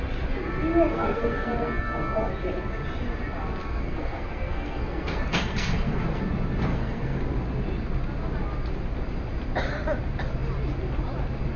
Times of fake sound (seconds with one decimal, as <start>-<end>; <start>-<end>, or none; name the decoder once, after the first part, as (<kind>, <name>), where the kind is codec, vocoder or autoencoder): 0.9-2.3 (codec, SNAC); 3.6-6.2; 6.7-7.2